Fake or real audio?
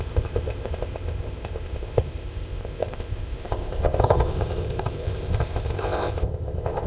fake